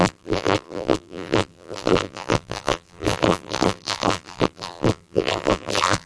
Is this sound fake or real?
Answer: fake